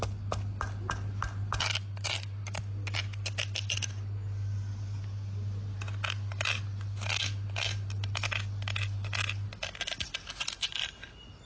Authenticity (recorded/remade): recorded